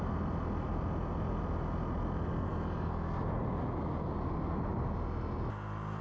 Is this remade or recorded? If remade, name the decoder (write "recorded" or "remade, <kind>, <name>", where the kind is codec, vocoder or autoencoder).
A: recorded